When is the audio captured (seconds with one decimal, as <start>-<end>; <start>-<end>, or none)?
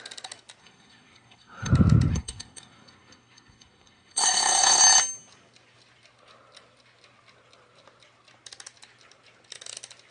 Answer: 0.0-0.6; 1.7-2.1; 4.8-10.1